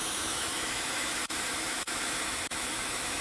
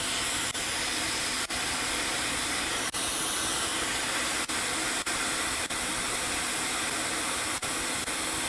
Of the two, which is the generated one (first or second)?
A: first